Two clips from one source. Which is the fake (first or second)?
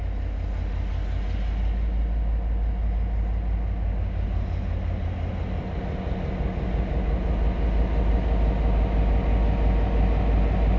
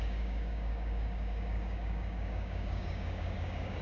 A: second